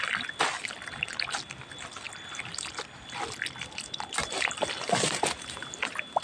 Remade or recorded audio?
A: recorded